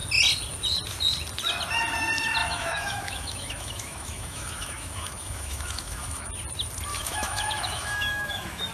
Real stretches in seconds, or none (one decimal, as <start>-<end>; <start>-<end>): 0.0-2.4; 6.3-6.9